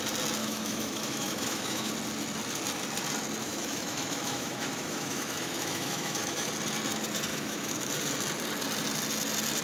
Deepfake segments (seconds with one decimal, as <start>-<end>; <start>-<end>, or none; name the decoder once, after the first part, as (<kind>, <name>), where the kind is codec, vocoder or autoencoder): 0.4-1.9 (autoencoder, DAC-VAE); 3.4-6.5; 7.3-7.9